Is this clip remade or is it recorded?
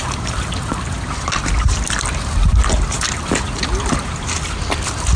recorded